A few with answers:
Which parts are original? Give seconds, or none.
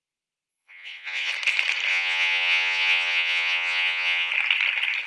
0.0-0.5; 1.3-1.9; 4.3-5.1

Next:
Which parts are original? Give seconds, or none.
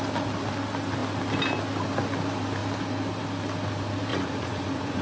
0.0-4.1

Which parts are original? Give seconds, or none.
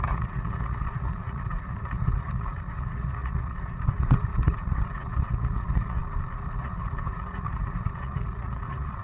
6.0-6.6